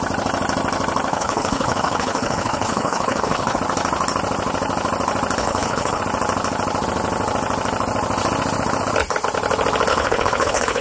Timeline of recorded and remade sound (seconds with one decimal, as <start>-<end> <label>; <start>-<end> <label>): 0.0-1.1 recorded; 1.1-3.6 remade; 3.6-5.4 recorded; 5.4-6.0 remade; 6.0-9.9 recorded; 9.9-10.8 remade